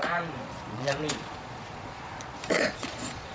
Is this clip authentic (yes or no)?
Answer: no